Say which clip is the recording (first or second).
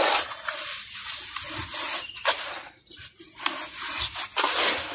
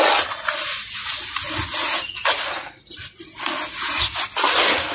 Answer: second